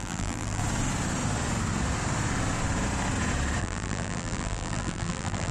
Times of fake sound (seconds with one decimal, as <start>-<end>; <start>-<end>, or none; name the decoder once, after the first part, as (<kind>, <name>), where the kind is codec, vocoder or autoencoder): 0.0-0.6 (vocoder, BigVGAN v2); 3.6-5.5